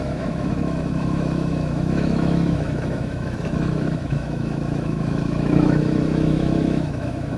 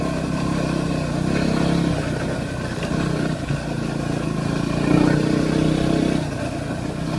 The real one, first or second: second